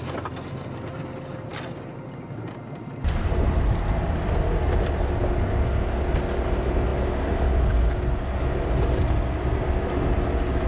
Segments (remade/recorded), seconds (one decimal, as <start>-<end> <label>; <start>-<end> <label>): 0.0-10.7 recorded